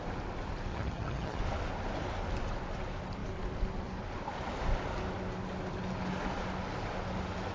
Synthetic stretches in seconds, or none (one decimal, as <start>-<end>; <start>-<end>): 0.7-1.4